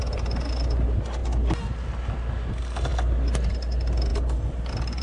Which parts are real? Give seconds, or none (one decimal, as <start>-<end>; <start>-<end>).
0.0-5.0